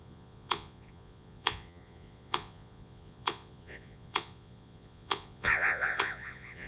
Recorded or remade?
remade